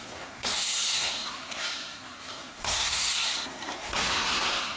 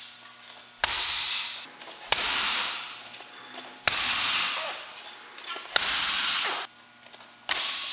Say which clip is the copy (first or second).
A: first